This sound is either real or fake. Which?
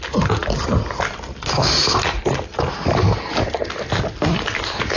real